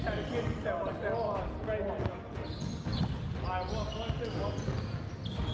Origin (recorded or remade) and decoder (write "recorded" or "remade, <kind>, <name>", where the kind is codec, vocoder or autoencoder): recorded